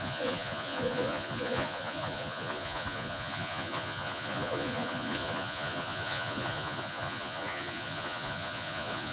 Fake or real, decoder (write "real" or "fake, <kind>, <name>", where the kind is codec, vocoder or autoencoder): fake, vocoder, Vocos